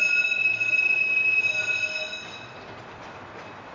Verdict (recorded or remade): recorded